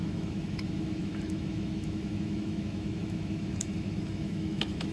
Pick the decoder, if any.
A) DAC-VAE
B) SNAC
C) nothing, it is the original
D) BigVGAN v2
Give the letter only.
A